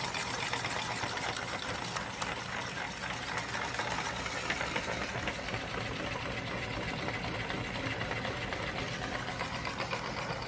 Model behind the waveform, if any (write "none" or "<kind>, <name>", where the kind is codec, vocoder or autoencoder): none